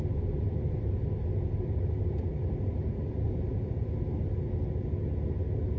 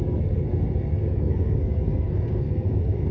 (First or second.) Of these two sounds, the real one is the first